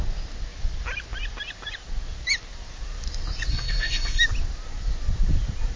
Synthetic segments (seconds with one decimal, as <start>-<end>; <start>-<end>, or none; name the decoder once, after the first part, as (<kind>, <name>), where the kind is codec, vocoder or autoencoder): 3.5-4.2 (codec, SNAC)